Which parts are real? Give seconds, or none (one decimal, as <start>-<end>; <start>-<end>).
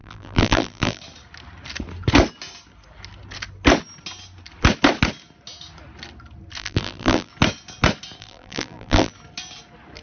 1.0-6.6; 7.3-8.2; 9.1-10.0